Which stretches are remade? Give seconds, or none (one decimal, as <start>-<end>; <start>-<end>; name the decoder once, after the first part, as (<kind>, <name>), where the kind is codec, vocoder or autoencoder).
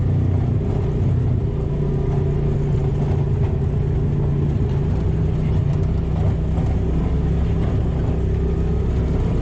none